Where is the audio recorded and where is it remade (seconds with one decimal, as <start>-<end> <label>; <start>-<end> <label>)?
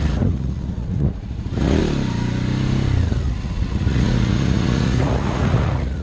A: 0.0-1.8 remade; 1.8-3.0 recorded; 3.0-6.0 remade